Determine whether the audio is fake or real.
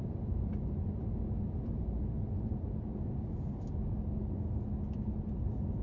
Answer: real